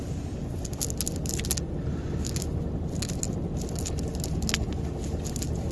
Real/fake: real